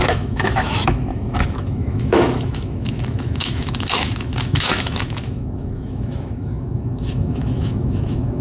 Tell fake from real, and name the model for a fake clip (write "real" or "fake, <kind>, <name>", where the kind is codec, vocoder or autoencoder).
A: fake, autoencoder, DAC-VAE